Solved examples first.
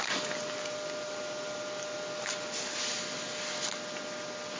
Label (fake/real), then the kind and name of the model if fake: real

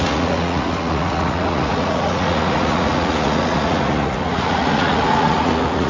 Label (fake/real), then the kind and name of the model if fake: fake, vocoder, Vocos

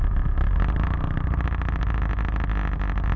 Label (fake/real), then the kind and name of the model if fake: real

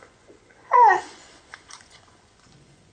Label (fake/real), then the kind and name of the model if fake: fake, vocoder, Vocos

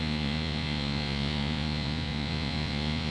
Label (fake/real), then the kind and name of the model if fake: fake, vocoder, Vocos